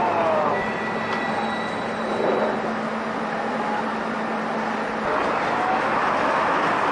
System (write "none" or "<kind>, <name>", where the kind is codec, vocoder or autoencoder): none